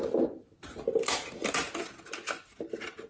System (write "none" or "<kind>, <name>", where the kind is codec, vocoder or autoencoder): none